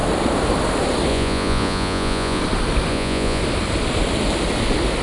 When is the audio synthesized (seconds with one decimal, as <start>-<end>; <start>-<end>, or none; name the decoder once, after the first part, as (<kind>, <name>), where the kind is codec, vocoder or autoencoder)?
1.1-2.4 (vocoder, Vocos); 2.9-3.4